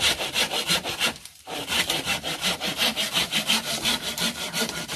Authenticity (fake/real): fake